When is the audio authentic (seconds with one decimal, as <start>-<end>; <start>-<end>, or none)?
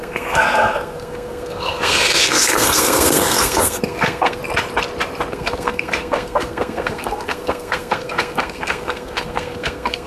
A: 4.4-5.3